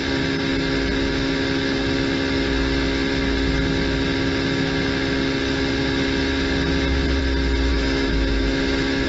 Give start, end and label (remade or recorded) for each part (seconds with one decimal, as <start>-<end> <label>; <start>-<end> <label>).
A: 0.0-7.7 recorded; 7.7-9.1 remade